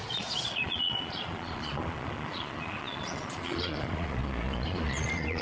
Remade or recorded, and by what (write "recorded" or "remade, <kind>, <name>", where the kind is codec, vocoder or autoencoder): remade, vocoder, Vocos